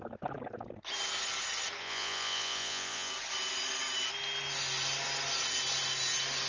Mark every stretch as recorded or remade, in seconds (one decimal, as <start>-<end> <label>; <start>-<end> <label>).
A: 0.0-1.8 recorded; 1.8-3.1 remade; 3.1-6.5 recorded